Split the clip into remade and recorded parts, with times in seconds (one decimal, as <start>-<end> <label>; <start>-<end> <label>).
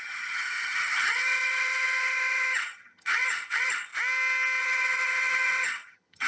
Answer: 0.0-3.9 remade; 3.9-4.6 recorded; 4.6-6.3 remade